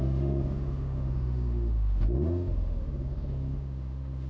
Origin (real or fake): fake